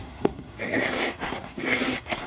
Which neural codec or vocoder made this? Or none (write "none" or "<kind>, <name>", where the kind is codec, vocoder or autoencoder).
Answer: codec, SNAC